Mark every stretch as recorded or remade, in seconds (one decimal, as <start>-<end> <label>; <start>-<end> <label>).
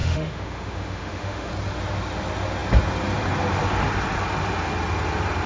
0.0-1.5 remade; 1.5-5.5 recorded